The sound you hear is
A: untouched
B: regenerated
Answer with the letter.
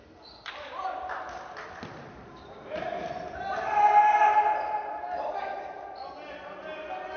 A